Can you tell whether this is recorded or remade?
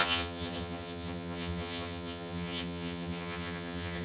remade